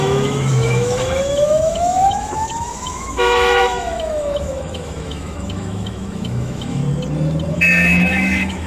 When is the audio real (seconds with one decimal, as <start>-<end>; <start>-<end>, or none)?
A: 6.8-7.5